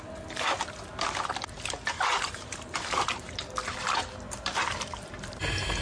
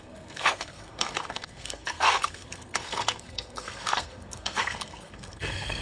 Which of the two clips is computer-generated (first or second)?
second